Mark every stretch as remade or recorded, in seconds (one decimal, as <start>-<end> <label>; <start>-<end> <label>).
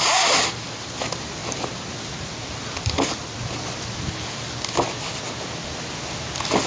0.0-6.7 recorded